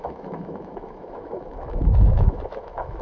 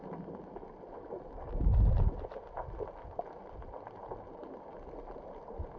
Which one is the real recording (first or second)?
second